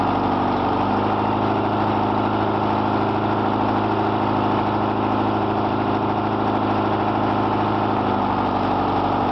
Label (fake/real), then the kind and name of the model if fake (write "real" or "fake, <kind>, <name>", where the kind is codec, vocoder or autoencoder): real